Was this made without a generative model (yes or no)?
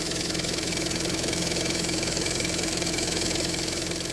no